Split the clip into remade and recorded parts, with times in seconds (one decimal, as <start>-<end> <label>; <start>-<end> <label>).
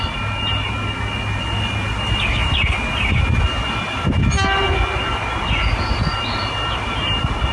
0.0-7.5 recorded